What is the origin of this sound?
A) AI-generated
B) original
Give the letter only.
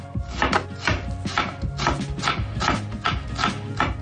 B